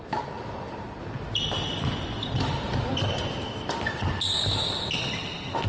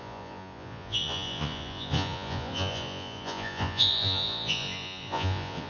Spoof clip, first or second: second